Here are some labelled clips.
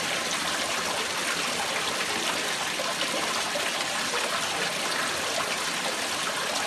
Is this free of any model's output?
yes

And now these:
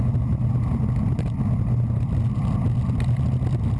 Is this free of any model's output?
yes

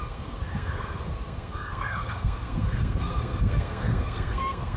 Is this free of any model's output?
no